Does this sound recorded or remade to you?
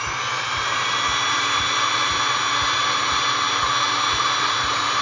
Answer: recorded